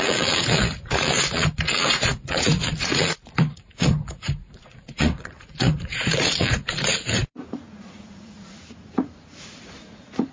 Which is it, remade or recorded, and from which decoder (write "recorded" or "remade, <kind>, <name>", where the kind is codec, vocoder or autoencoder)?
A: remade, vocoder, Vocos